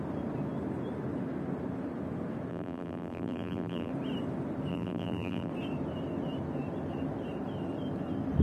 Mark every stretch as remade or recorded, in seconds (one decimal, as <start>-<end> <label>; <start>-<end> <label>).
0.0-2.5 recorded; 2.5-3.9 remade; 3.9-4.7 recorded; 4.7-5.5 remade; 5.5-8.4 recorded